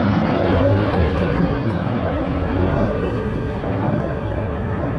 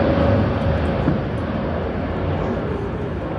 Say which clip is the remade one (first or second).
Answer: first